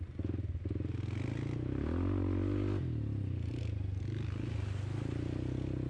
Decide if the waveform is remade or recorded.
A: recorded